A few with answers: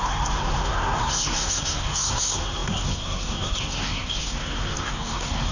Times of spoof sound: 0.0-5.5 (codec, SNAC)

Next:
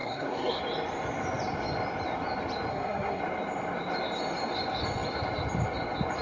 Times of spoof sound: 0.0-0.6 (codec, SNAC); 2.7-3.2

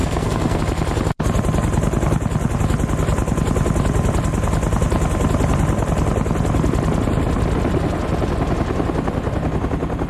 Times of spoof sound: 0.0-0.6 (codec, SNAC)

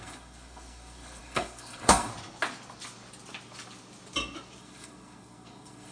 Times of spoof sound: 0.0-2.1 (codec, SNAC); 4.6-5.9

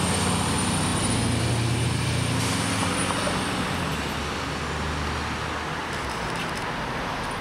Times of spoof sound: none

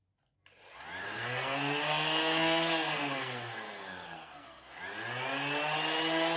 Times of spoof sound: 1.0-4.8 (codec, SNAC)

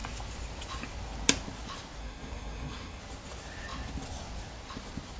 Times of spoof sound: 2.0-3.0 (codec, SNAC)

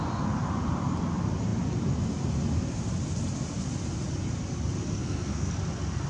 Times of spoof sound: 5.0-5.5 (codec, SNAC)